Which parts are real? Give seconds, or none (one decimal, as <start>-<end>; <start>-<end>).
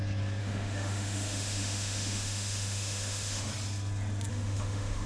0.0-0.4; 3.5-4.3